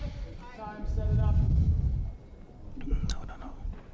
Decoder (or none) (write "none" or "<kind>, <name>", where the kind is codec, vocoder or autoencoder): none